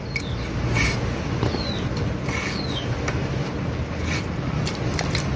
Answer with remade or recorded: recorded